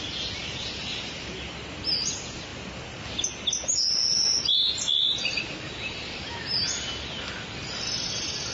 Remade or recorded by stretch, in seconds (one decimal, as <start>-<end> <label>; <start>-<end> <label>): 0.0-8.5 recorded